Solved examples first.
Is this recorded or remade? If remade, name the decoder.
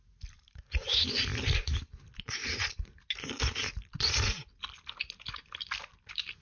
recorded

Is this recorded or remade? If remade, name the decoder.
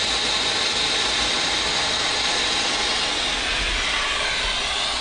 recorded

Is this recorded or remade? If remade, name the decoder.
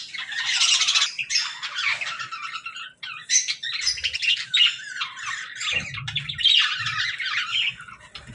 recorded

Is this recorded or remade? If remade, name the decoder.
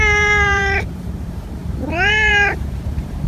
remade, vocoder, BigVGAN v2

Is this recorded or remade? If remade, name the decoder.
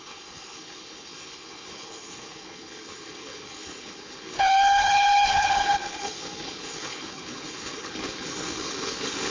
remade, codec, HILCodec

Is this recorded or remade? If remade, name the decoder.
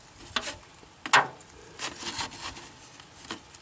recorded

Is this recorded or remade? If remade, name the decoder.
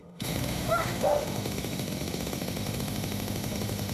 remade, autoencoder, DAC-VAE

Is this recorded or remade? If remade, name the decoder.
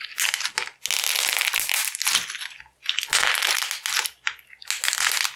recorded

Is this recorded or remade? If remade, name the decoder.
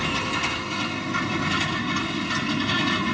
recorded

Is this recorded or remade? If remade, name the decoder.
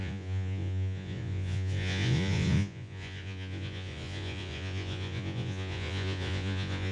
remade, vocoder, Vocos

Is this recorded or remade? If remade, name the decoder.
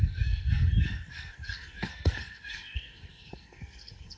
remade, codec, SNAC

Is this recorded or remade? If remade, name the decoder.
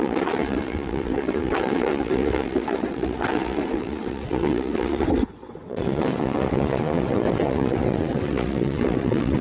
remade, vocoder, WaveNeXt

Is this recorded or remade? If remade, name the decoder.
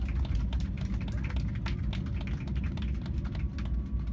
recorded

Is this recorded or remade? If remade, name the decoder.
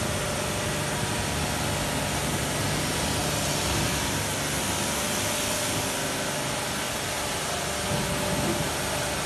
recorded